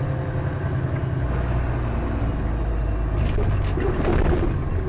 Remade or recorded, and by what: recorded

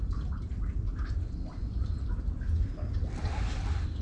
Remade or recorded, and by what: recorded